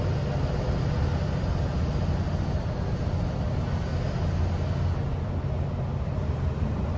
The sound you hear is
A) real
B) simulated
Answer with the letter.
A